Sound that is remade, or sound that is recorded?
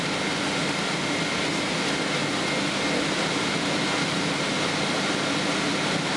recorded